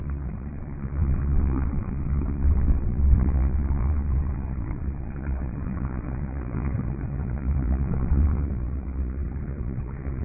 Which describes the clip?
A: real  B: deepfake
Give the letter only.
B